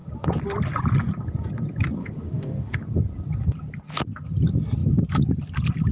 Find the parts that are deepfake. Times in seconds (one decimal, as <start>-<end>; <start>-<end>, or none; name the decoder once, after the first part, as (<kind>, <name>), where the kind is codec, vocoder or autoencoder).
2.0-2.8 (autoencoder, DAC-VAE)